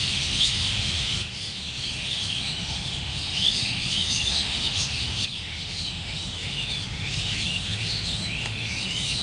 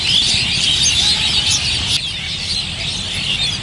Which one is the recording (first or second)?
second